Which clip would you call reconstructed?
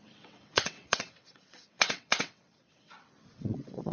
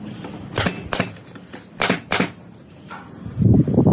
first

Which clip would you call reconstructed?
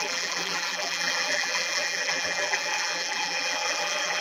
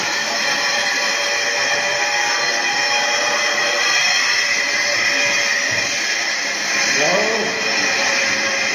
first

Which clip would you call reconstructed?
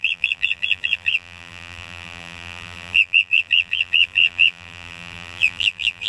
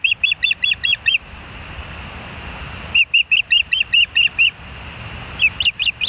first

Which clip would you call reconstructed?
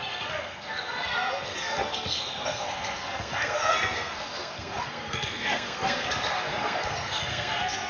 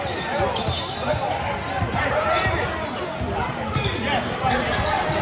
first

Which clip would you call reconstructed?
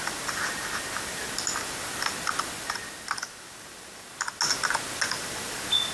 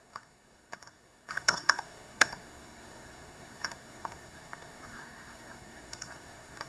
second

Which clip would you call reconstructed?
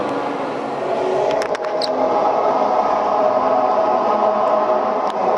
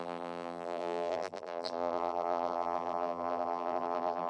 second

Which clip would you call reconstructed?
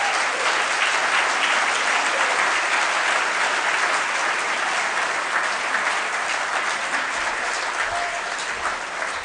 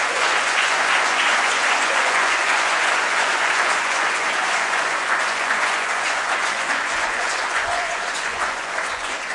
second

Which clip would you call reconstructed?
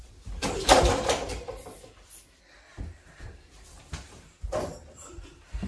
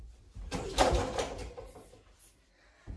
first